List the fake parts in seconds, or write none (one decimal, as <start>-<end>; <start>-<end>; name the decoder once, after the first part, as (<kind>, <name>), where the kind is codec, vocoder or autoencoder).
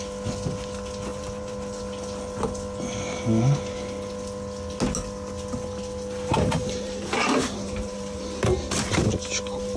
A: 1.1-1.8 (vocoder, BigVGAN v2); 6.3-8.2